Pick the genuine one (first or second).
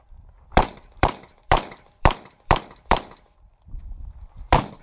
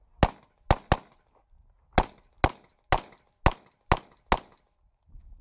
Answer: second